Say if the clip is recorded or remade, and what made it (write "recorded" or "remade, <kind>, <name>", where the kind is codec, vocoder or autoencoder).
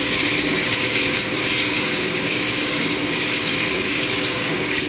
remade, codec, DAC